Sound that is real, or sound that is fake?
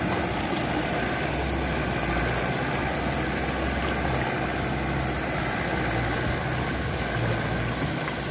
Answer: real